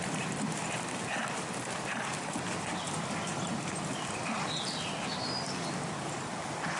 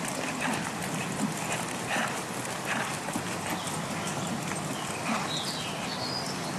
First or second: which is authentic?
second